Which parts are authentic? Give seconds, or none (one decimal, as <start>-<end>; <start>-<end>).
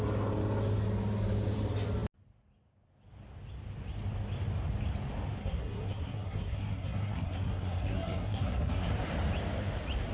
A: 0.0-5.4; 8.9-10.1